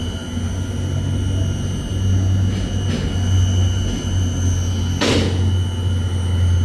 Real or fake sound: real